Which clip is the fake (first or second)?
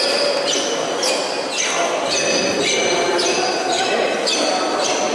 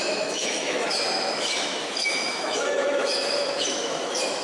second